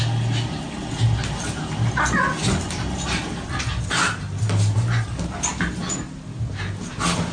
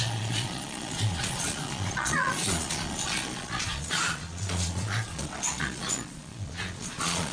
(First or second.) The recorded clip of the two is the first